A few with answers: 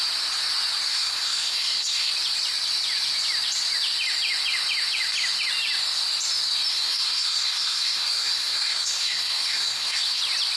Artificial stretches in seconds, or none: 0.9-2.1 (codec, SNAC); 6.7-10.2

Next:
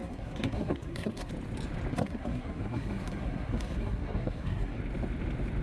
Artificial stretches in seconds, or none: 0.0-1.3 (codec, SNAC); 1.9-4.8

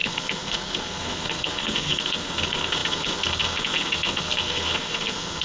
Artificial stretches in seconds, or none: 0.0-5.4 (codec, SNAC)